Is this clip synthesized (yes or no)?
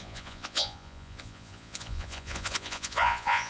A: yes